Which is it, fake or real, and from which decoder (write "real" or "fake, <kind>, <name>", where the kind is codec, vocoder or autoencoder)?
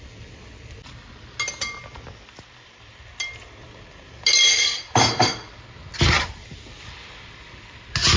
real